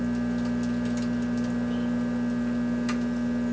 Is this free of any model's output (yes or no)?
yes